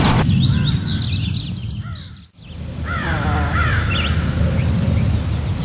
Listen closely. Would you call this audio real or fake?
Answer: real